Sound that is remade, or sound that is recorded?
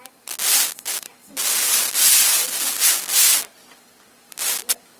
recorded